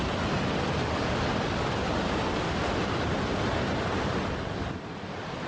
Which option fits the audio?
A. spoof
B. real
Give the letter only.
B